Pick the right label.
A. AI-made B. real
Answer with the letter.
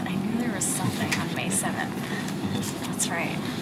B